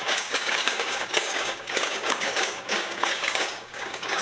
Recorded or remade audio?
remade